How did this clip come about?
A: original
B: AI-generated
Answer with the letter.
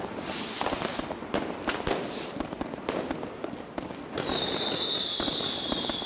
A